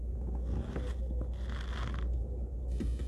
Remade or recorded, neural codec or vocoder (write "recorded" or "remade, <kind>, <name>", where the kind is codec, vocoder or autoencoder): recorded